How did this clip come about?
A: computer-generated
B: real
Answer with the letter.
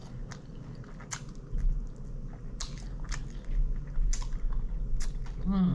B